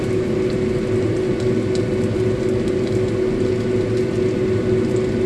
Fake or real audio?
real